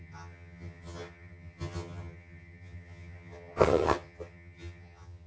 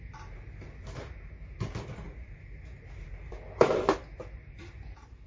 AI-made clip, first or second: first